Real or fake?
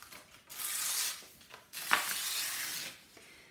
real